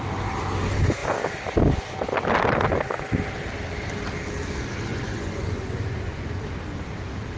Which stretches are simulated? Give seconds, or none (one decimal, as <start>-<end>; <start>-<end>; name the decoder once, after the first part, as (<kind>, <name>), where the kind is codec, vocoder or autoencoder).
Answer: 4.9-6.4 (vocoder, Vocos)